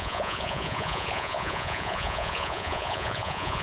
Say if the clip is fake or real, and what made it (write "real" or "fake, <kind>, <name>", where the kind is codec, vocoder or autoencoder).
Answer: fake, vocoder, Vocos